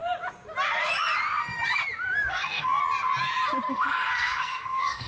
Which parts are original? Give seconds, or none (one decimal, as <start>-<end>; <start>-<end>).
0.0-2.3; 2.8-3.7